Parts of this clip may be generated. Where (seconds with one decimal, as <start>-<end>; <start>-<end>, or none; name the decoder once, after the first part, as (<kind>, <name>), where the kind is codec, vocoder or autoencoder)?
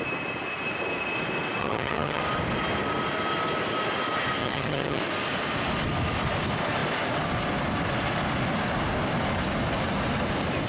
1.6-2.2 (vocoder, HiFi-GAN); 4.4-5.0